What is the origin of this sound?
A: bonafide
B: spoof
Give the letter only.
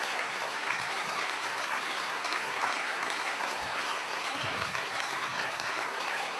B